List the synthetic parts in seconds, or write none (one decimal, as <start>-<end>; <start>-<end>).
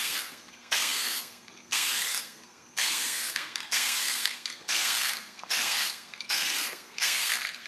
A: 0.0-7.7